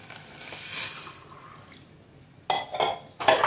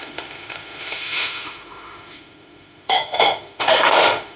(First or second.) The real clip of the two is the first